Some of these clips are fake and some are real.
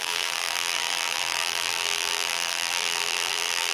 fake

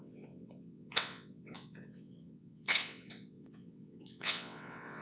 fake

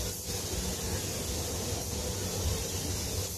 real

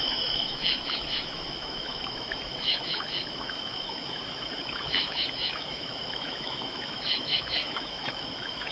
fake